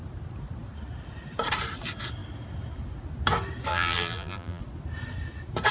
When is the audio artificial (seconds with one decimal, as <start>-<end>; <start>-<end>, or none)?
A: 3.7-4.6